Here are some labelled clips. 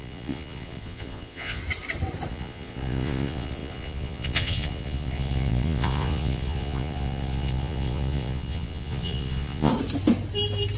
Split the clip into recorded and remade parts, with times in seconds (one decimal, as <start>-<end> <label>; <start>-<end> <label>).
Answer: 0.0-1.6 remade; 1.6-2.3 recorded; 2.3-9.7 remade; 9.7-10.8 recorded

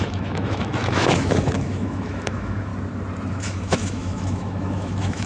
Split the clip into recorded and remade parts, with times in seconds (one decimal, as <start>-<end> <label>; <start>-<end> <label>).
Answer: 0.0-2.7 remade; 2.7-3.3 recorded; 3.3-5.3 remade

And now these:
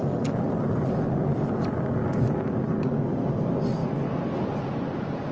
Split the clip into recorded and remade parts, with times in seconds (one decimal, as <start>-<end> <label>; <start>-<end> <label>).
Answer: 0.0-5.3 recorded

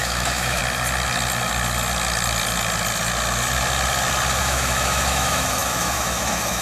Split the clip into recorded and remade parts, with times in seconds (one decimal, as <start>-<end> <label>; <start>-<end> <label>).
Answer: 0.0-0.6 remade; 0.6-4.4 recorded; 4.4-6.6 remade

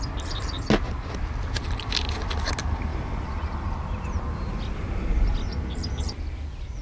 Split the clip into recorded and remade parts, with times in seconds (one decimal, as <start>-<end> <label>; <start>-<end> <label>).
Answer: 0.0-6.8 recorded

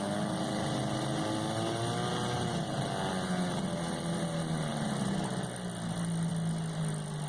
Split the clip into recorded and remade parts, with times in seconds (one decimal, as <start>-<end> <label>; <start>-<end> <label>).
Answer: 0.0-7.3 recorded

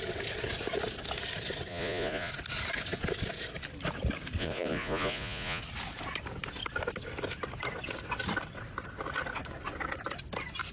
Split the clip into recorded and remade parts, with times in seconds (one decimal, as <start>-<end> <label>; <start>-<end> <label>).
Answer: 0.0-1.7 recorded; 1.7-2.3 remade; 2.3-4.4 recorded; 4.4-5.6 remade; 5.6-10.7 recorded